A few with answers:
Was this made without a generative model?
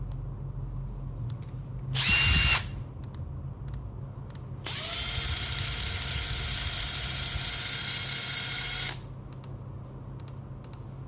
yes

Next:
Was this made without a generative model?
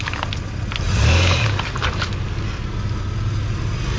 yes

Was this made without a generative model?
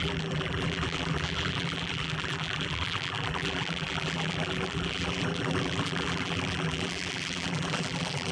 no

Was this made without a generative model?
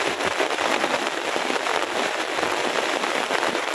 no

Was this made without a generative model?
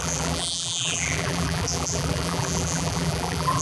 no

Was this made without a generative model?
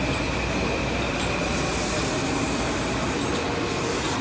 no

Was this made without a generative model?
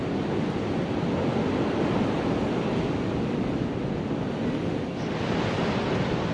yes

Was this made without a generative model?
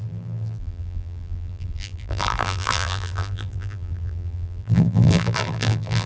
no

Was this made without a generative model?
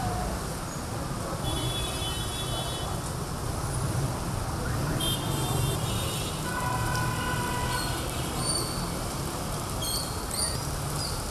no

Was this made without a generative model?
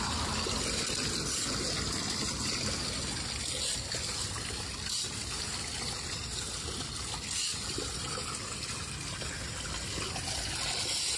yes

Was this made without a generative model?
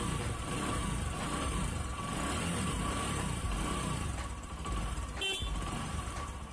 no